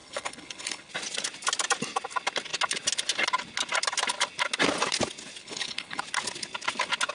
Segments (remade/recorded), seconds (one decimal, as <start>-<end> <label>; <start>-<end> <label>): 0.0-0.9 remade; 0.9-5.4 recorded; 5.4-6.0 remade; 6.0-7.1 recorded